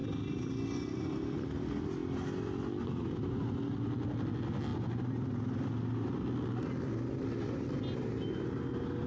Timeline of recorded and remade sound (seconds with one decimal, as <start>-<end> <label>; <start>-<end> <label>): 0.0-9.1 recorded